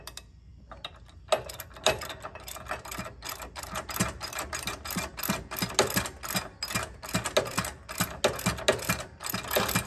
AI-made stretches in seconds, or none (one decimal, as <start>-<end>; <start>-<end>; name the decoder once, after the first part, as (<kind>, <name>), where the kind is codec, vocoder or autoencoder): none